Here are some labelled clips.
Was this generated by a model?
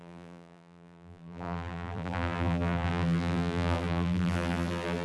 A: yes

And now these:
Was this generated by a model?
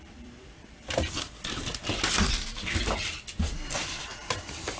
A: yes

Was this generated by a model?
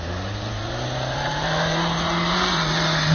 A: yes